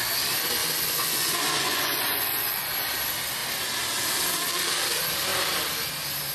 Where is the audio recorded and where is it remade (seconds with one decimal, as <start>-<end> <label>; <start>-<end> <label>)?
0.0-0.6 recorded; 0.6-2.7 remade; 2.7-6.3 recorded